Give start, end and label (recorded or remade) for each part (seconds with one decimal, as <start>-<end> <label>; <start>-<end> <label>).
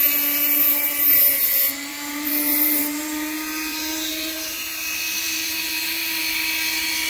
0.0-1.9 recorded; 1.9-6.2 remade; 6.2-7.1 recorded